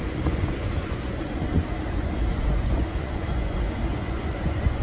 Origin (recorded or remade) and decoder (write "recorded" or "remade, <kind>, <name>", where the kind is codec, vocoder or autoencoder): remade, vocoder, Vocos